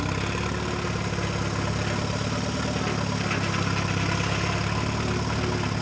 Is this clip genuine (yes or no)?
yes